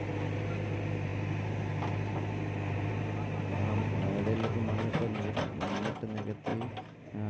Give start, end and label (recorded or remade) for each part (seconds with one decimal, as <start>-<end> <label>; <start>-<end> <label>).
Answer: 0.0-4.4 recorded; 4.4-5.3 remade; 5.3-7.3 recorded